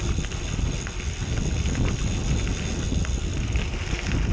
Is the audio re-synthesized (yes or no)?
no